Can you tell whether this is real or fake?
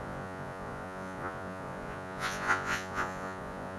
fake